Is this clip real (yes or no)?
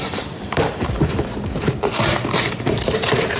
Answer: no